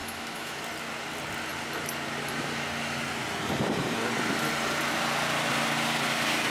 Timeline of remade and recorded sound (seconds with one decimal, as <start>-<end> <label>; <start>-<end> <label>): 0.0-0.6 remade; 0.6-6.5 recorded